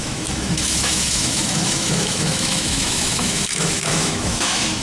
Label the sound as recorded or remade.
remade